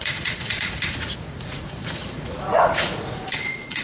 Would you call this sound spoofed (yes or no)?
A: yes